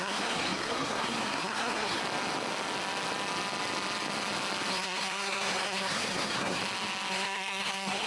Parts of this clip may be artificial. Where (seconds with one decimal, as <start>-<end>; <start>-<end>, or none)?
0.0-2.0; 4.7-6.6; 7.1-8.1